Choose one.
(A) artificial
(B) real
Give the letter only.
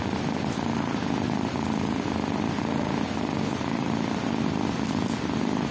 B